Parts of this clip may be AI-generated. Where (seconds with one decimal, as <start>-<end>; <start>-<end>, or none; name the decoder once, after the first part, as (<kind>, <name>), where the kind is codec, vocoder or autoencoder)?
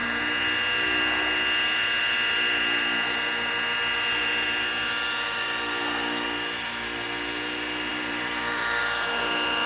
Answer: 7.9-8.8 (vocoder, BigVGAN v2)